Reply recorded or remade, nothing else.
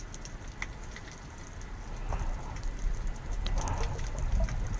recorded